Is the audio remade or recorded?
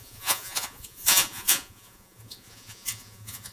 remade